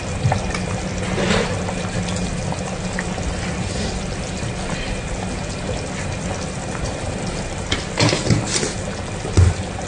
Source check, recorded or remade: recorded